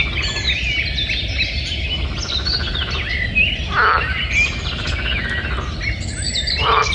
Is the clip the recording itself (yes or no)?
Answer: yes